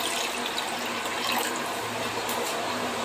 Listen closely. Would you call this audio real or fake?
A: real